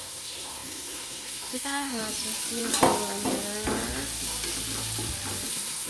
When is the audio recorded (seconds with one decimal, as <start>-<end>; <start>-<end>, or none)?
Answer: 2.0-5.5